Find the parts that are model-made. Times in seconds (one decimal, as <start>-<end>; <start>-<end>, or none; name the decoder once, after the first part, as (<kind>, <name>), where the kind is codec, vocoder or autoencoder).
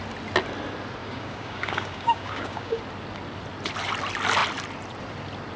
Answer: 1.0-2.8 (codec, DAC)